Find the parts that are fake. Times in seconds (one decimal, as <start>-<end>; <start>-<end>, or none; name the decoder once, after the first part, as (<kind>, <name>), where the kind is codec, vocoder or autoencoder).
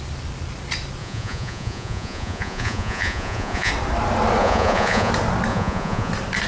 1.0-3.7 (vocoder, Vocos); 4.4-5.1; 5.5-6.1